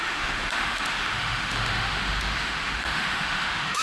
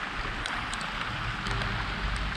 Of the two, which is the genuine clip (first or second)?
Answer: second